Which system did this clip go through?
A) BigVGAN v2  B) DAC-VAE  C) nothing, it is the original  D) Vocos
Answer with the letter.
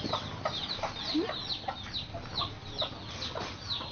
C